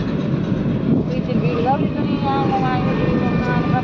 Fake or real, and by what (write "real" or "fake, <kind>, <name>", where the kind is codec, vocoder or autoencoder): real